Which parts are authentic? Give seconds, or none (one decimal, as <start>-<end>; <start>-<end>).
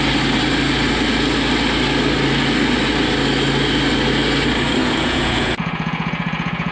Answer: 0.0-4.8